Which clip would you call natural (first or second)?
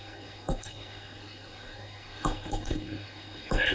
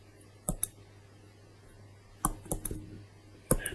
second